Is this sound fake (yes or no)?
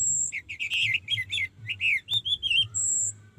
no